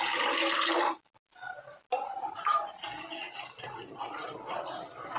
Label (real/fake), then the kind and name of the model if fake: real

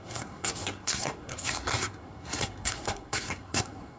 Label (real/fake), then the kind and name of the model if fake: fake, codec, SNAC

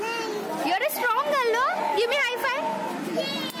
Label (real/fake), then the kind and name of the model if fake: real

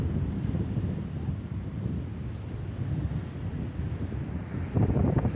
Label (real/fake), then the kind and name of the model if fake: real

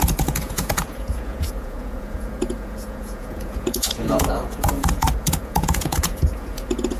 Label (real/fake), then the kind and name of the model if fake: fake, vocoder, Vocos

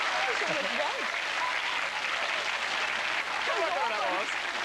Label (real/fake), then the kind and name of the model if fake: real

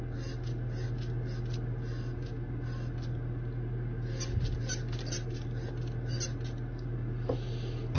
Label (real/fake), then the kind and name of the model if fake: real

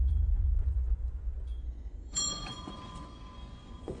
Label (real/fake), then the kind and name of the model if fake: fake, vocoder, Vocos